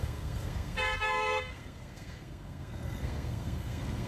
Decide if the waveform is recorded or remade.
remade